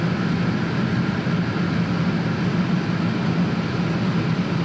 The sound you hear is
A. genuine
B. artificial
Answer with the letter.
A